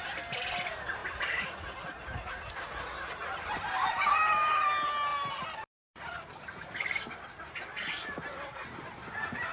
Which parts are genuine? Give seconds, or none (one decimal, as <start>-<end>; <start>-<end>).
0.0-5.1; 8.9-9.5